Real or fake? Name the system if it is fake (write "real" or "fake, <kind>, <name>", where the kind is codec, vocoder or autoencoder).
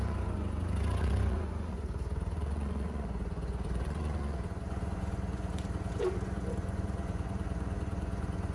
fake, vocoder, Vocos